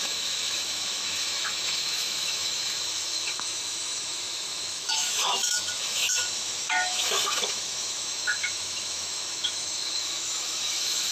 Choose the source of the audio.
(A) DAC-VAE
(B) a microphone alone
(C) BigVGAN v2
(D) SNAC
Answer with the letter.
A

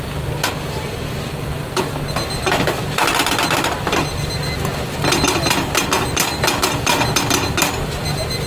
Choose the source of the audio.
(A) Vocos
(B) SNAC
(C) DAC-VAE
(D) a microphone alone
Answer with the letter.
D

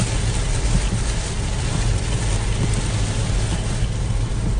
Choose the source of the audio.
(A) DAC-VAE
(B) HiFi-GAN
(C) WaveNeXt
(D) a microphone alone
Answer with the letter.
D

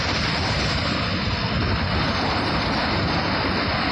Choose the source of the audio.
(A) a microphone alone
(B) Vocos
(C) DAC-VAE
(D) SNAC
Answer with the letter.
A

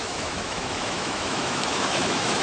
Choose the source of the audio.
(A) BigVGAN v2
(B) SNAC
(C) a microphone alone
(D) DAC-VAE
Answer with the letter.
D